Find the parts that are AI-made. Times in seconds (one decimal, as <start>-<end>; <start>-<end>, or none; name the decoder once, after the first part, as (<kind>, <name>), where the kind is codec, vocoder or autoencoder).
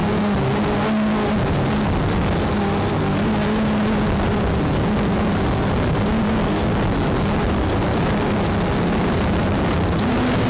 none